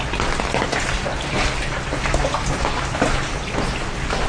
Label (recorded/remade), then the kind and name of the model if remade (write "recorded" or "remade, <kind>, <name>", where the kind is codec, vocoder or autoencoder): recorded